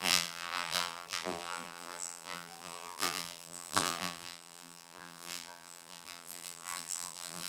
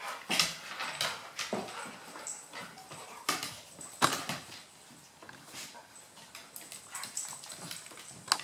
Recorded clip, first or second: second